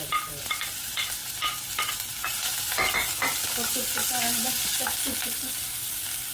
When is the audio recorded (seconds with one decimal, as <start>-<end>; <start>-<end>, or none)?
0.0-6.3